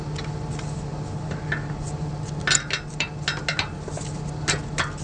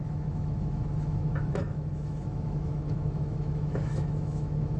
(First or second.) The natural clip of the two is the first